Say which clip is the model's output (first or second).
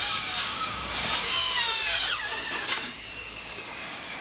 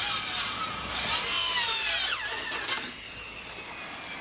first